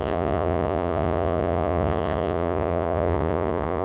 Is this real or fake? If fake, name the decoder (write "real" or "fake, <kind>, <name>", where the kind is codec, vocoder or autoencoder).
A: fake, vocoder, Vocos